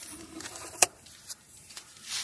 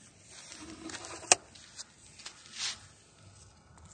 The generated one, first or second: first